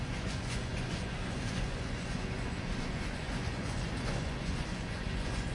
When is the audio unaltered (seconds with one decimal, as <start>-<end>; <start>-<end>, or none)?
none